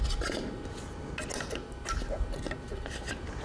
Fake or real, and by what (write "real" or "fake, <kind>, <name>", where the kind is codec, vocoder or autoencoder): real